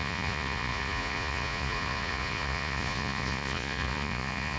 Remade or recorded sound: remade